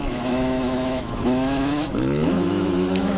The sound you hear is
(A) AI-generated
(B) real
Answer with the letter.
A